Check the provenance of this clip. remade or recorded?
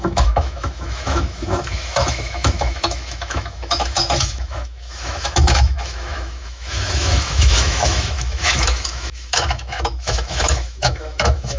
remade